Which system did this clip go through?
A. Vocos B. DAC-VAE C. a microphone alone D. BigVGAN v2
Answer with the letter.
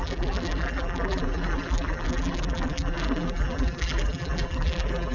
D